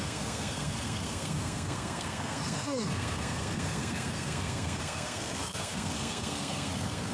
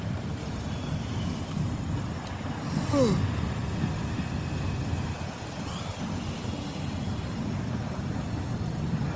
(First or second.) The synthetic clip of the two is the first